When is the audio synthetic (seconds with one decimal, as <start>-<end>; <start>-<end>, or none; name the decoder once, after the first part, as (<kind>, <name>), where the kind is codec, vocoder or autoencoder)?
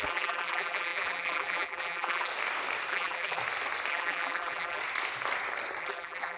0.0-2.3 (vocoder, BigVGAN v2); 2.9-3.4; 3.9-4.8; 5.8-6.4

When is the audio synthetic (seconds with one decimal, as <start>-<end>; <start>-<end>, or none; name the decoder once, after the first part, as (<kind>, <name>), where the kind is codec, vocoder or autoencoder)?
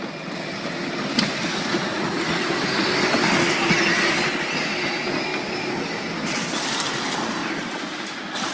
1.4-2.5 (vocoder, Vocos)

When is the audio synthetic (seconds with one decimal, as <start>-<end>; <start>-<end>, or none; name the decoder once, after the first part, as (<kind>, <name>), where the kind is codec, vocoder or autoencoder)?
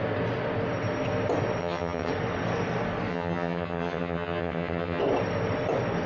1.6-2.1 (vocoder, HiFi-GAN); 3.1-5.0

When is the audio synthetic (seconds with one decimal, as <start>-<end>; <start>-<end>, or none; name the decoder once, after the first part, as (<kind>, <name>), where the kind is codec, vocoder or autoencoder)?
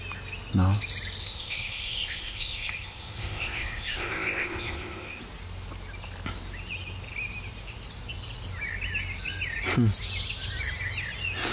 1.2-5.2 (codec, ZipCodec)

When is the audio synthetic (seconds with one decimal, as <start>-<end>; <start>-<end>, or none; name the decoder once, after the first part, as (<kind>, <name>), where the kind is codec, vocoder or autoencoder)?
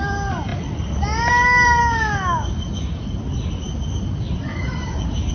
1.8-3.2 (codec, DAC); 4.5-5.3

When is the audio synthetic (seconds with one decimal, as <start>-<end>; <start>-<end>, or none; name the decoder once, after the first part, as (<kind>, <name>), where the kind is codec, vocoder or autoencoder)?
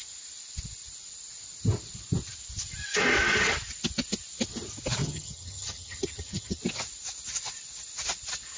5.0-6.6 (vocoder, HiFi-GAN)